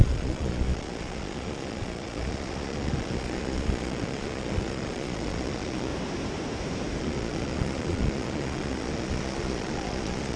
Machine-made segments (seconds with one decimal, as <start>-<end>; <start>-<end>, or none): 0.0-5.9; 7.0-10.4